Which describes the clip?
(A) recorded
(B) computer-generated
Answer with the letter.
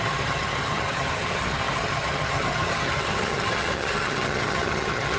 B